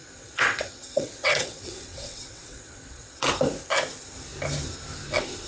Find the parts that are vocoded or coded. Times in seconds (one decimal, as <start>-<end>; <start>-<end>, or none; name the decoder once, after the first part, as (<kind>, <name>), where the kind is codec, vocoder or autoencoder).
0.0-3.3 (vocoder, WaveNeXt)